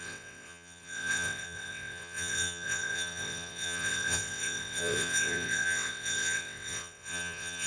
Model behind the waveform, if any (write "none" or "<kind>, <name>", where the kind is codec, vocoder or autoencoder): vocoder, WaveNeXt